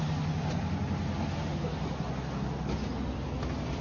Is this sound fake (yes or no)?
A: no